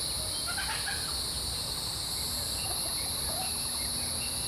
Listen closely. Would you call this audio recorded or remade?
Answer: recorded